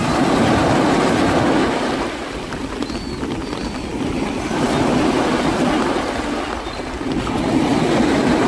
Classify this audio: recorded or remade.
recorded